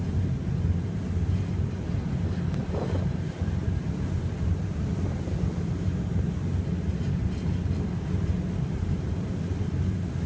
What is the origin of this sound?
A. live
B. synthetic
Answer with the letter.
A